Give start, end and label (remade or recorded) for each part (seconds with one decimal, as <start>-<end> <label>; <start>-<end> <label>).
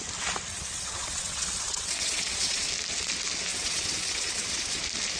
0.0-0.5 recorded; 0.5-2.7 remade; 2.7-3.5 recorded; 3.5-4.8 remade; 4.8-5.2 recorded